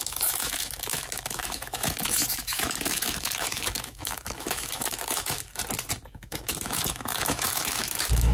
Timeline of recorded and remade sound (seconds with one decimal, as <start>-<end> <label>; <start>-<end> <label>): 0.0-5.6 remade; 5.6-6.1 recorded; 6.1-8.3 remade